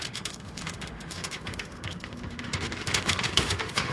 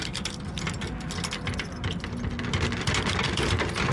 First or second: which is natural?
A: second